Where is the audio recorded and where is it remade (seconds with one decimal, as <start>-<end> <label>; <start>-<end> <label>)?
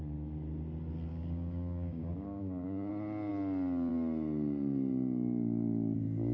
0.0-1.1 recorded; 1.1-2.9 remade; 2.9-6.3 recorded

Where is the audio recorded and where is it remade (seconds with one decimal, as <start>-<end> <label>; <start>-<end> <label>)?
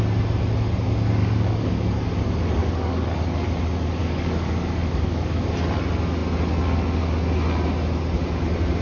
0.0-1.2 recorded; 1.2-2.1 remade; 2.1-2.6 recorded; 2.6-3.4 remade; 3.4-4.0 recorded; 4.0-5.5 remade; 5.5-8.8 recorded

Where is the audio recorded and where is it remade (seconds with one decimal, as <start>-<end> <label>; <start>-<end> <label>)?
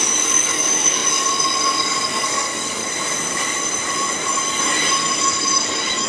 0.0-2.8 remade; 2.8-5.2 recorded; 5.2-6.1 remade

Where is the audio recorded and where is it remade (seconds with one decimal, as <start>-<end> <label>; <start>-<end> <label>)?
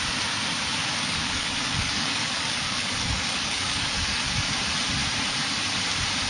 0.0-0.8 recorded; 0.8-4.5 remade; 4.5-6.3 recorded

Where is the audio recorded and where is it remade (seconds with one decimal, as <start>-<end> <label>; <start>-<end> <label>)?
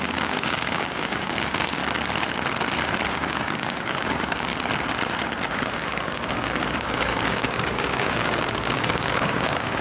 0.0-1.8 remade; 1.8-3.1 recorded; 3.1-4.5 remade; 4.5-5.5 recorded; 5.5-9.8 remade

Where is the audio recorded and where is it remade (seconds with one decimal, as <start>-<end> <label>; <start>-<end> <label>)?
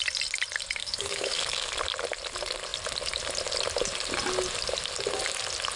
0.0-0.8 recorded; 0.8-1.7 remade; 1.7-5.8 recorded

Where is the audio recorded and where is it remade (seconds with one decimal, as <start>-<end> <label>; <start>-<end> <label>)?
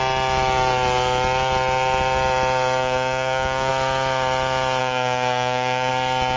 0.0-2.8 recorded; 2.8-3.7 remade; 3.7-4.8 recorded; 4.8-5.9 remade; 5.9-6.4 recorded